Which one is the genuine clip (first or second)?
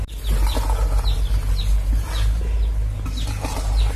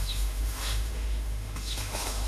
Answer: first